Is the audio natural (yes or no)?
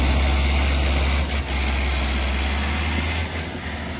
yes